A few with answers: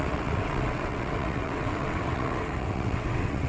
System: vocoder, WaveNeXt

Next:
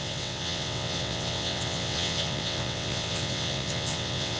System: vocoder, WaveNeXt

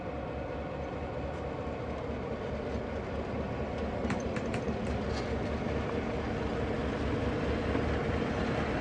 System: none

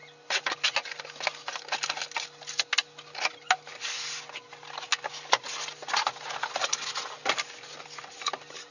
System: none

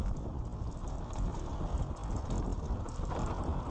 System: none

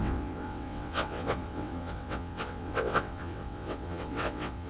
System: vocoder, WaveNeXt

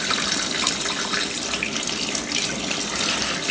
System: none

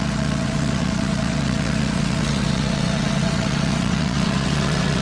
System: vocoder, WaveNeXt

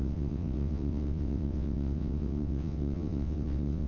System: vocoder, WaveNeXt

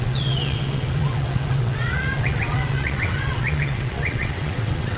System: vocoder, WaveNeXt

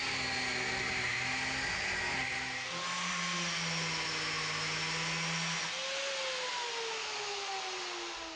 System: none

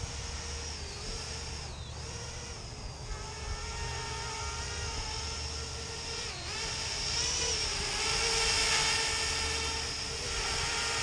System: none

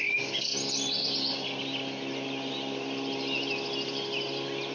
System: none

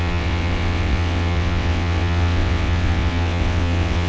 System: vocoder, WaveNeXt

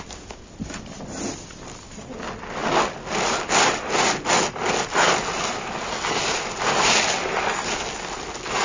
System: none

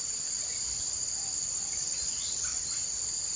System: none